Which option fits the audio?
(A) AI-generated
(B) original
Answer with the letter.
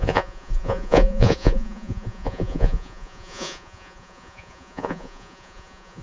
A